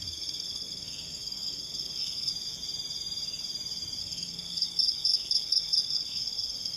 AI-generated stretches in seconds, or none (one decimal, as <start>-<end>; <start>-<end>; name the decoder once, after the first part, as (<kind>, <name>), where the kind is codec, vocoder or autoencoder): 0.0-2.3 (codec, SNAC); 4.0-6.8